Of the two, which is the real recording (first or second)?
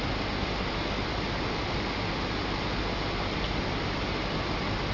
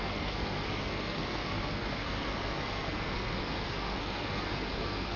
first